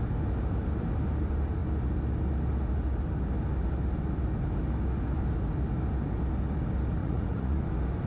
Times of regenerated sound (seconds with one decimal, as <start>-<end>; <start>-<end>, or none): 7.0-7.6